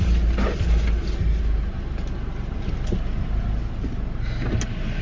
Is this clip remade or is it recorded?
recorded